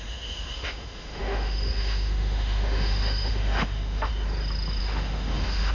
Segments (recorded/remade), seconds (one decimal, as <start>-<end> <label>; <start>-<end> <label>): 0.0-4.1 remade; 4.1-4.8 recorded; 4.8-5.7 remade